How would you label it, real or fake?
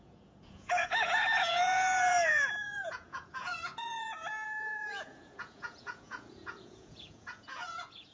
fake